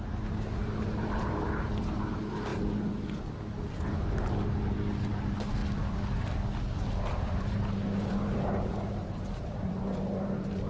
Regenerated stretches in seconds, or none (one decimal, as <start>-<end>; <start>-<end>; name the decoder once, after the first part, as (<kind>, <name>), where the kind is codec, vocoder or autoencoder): 0.0-2.5 (vocoder, BigVGAN v2); 5.0-5.6; 7.0-10.7